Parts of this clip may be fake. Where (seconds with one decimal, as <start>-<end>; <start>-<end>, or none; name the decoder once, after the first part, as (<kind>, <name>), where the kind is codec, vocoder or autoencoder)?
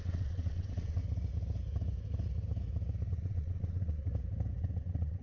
0.0-1.0 (vocoder, WaveNeXt); 3.1-4.1; 4.6-5.2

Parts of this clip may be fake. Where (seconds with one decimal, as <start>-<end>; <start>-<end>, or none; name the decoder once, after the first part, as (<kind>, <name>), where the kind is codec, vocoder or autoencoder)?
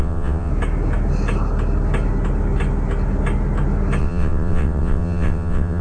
0.0-0.5 (vocoder, WaveNeXt); 4.0-5.8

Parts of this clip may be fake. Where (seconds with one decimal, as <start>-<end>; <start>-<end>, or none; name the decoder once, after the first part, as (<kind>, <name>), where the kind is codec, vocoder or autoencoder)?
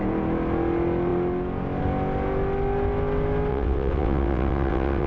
3.5-5.1 (vocoder, WaveNeXt)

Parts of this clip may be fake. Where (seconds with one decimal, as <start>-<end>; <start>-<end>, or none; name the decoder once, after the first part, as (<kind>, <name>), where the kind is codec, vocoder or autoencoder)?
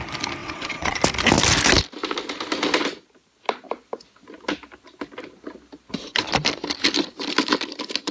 0.4-1.0 (vocoder, WaveNeXt)